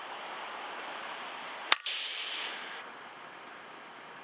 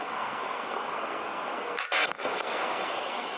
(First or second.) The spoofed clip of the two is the second